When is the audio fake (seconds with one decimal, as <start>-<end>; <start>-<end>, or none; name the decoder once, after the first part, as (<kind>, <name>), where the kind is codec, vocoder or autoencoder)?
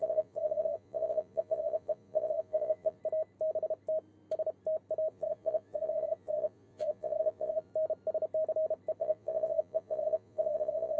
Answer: 0.0-3.0 (vocoder, Vocos); 5.1-7.7; 9.0-11.0